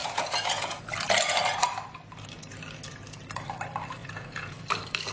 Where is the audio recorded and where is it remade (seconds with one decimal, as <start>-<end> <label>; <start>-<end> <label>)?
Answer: 0.0-0.9 remade; 0.9-4.0 recorded; 4.0-4.6 remade; 4.6-5.1 recorded